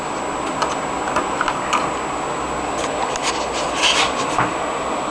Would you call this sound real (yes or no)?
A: yes